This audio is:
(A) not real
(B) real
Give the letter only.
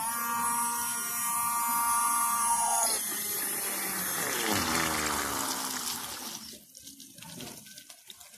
B